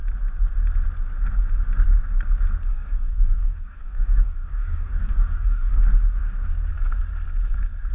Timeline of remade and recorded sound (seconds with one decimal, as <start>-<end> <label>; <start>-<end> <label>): 0.0-2.7 recorded; 2.7-5.8 remade; 5.8-7.9 recorded